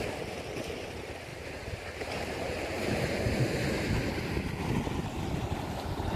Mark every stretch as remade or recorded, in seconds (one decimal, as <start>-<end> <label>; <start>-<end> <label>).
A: 0.0-1.3 recorded; 1.3-4.1 remade; 4.1-6.2 recorded